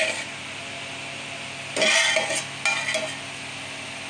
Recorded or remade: recorded